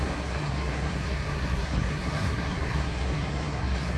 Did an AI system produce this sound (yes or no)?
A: yes